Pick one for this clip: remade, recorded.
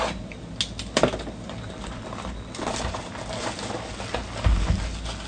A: recorded